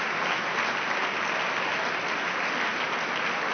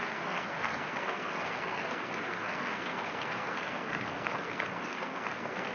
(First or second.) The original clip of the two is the first